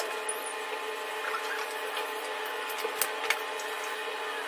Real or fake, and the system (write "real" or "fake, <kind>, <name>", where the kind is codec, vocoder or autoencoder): real